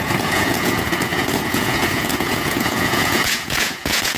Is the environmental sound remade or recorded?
remade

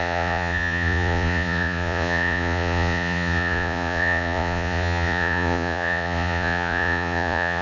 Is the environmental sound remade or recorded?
remade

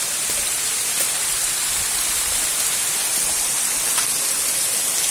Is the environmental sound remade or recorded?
recorded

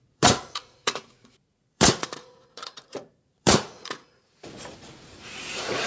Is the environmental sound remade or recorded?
remade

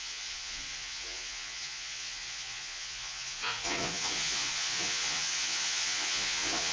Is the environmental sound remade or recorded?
remade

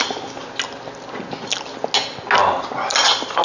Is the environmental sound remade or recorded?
recorded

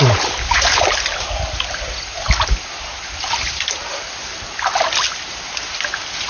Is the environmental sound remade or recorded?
recorded